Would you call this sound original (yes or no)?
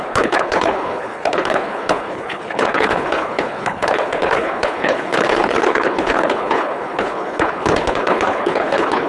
no